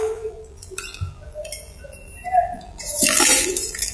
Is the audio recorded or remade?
remade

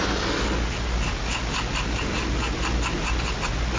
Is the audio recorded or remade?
recorded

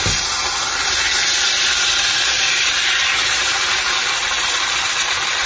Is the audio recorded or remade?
recorded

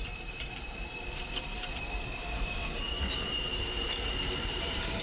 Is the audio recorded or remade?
remade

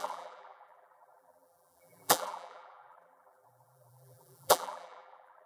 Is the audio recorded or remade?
remade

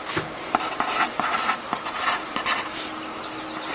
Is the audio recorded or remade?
recorded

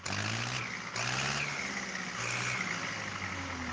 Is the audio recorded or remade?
recorded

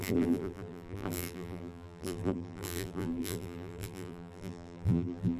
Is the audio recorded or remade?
remade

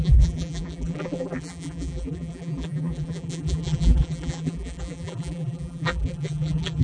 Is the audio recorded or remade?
remade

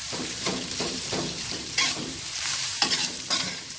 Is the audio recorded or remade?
remade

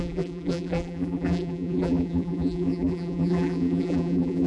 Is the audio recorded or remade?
remade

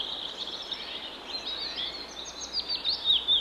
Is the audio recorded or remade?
recorded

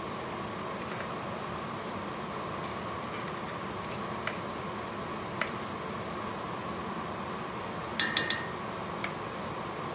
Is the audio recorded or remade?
recorded